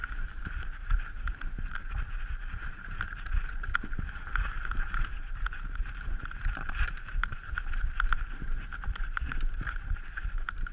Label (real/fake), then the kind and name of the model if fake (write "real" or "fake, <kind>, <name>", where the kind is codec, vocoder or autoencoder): fake, vocoder, BigVGAN v2